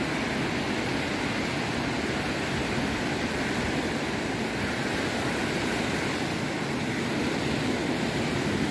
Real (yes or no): yes